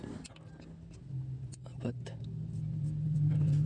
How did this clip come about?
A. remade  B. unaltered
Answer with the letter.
B